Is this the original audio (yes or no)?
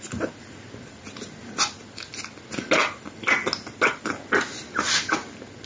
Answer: yes